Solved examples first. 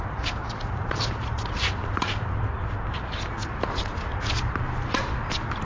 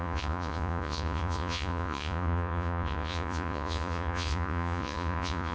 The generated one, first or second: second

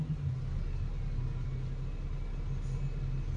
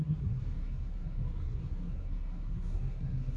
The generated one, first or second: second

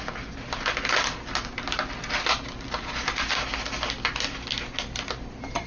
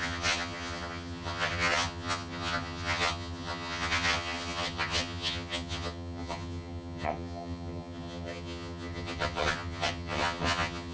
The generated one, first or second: second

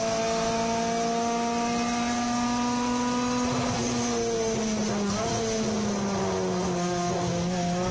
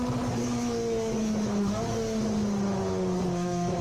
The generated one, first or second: second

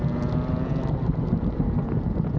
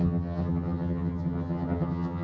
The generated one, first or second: second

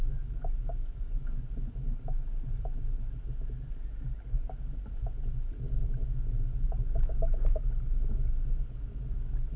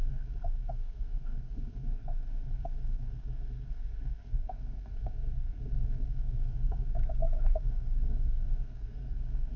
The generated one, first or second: second